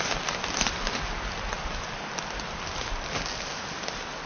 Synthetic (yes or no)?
no